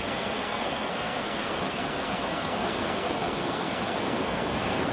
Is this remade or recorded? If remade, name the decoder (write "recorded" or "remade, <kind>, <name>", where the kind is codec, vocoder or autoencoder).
remade, codec, SNAC